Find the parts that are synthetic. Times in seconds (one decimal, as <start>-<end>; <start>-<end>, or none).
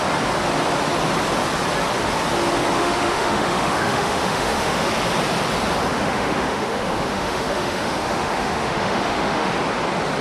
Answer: 2.8-4.9; 5.9-9.5